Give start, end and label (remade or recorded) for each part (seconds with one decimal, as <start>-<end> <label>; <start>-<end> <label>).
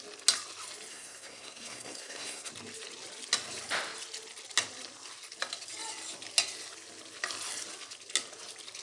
0.0-0.9 recorded; 0.9-2.5 remade; 2.5-8.8 recorded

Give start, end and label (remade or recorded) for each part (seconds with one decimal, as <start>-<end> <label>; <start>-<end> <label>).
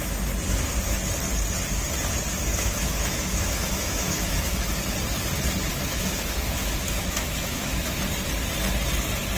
0.0-2.5 recorded; 2.5-4.7 remade; 4.7-5.7 recorded; 5.7-8.0 remade; 8.0-9.4 recorded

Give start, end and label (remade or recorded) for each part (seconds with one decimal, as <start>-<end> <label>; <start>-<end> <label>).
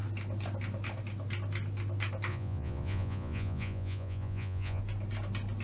0.0-2.3 recorded; 2.3-4.8 remade; 4.8-5.6 recorded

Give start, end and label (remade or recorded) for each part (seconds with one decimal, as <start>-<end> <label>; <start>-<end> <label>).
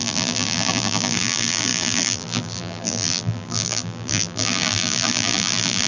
0.0-5.9 remade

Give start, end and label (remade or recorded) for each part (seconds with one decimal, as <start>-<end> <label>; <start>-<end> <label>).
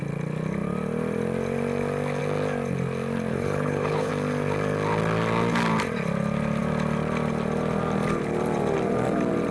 0.0-3.3 recorded; 3.3-4.1 remade; 4.1-9.5 recorded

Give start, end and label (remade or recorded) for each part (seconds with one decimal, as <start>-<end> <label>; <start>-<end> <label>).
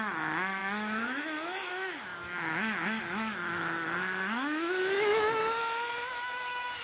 0.0-5.4 remade; 5.4-6.1 recorded; 6.1-6.8 remade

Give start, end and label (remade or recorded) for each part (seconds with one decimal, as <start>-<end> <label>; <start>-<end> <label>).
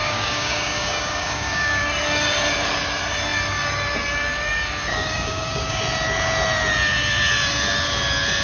0.0-1.8 remade; 1.8-4.9 recorded; 4.9-5.8 remade; 5.8-8.4 recorded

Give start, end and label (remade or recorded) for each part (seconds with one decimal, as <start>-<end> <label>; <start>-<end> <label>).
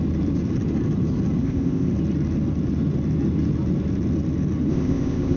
0.0-1.4 recorded; 1.4-1.9 remade; 1.9-4.7 recorded; 4.7-5.4 remade